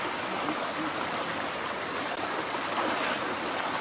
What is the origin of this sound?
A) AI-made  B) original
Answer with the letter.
B